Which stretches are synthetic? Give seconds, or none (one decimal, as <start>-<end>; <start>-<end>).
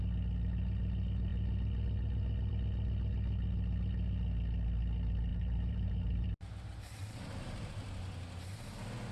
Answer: 5.3-7.3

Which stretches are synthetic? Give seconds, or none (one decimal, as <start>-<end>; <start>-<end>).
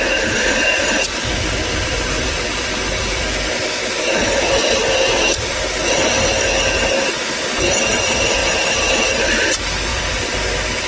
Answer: 0.8-5.4; 8.4-9.4; 9.9-10.4